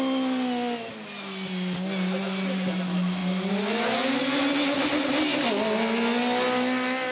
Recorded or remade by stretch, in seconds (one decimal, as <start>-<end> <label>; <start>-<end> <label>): 0.0-7.1 recorded